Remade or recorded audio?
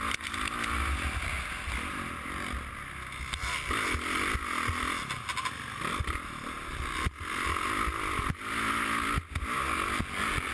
recorded